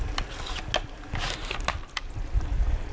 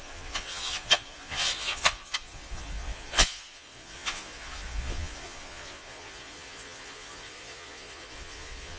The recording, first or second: first